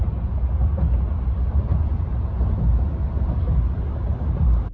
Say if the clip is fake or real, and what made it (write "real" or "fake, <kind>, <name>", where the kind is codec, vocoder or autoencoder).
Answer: real